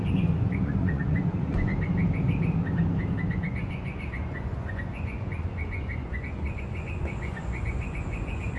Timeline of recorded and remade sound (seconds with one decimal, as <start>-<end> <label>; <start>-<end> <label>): 0.0-1.7 remade; 1.7-3.3 recorded; 3.3-8.6 remade